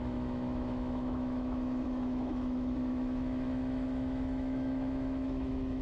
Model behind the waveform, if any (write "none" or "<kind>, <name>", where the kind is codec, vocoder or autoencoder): autoencoder, DAC-VAE